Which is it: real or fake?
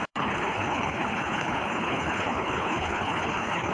fake